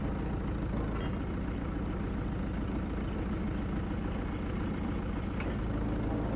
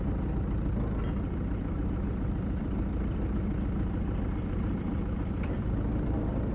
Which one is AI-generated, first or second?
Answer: second